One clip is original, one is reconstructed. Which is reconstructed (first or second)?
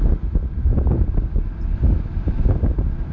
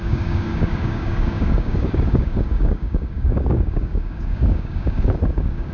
second